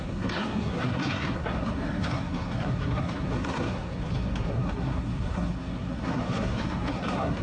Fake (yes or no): yes